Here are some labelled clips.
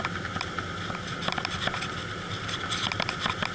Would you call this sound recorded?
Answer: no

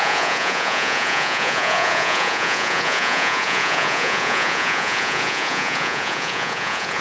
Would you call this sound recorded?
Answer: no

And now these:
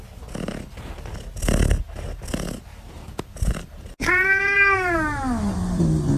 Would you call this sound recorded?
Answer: yes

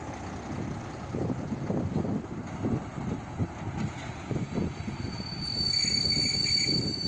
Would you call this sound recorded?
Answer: yes